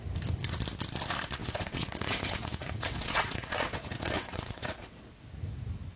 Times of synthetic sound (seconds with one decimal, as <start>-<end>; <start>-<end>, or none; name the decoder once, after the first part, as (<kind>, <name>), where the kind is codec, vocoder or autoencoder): 1.4-5.0 (vocoder, WaveNeXt)